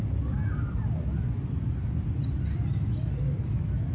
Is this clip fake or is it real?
real